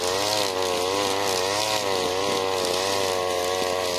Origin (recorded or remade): recorded